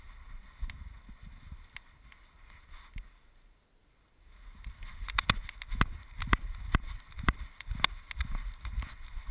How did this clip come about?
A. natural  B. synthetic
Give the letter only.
A